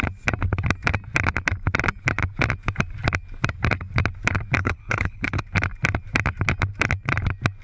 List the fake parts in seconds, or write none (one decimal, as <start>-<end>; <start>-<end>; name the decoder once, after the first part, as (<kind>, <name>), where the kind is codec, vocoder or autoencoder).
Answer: 4.6-5.4 (codec, HILCodec)